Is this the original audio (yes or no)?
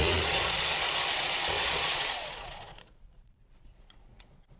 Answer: no